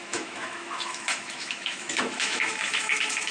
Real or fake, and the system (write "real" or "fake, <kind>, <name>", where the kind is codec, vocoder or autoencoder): fake, autoencoder, DAC-VAE